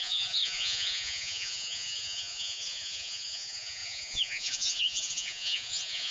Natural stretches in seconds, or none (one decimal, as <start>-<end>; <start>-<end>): none